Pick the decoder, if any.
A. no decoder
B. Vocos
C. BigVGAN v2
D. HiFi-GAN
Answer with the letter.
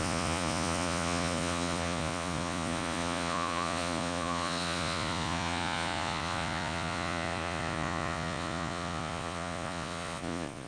B